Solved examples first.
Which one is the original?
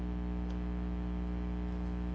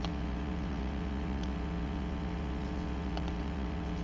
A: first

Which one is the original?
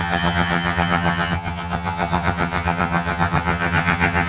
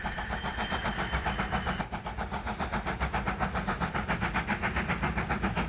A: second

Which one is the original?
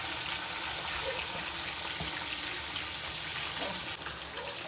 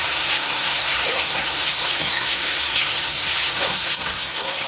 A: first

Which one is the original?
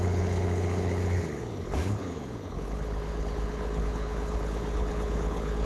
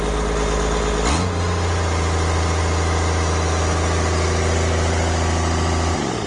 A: second